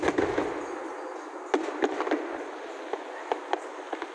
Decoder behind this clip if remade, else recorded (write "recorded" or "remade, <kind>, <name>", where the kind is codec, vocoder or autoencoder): recorded